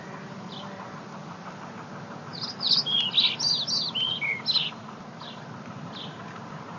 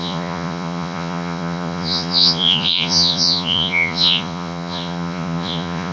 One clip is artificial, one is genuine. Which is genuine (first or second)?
first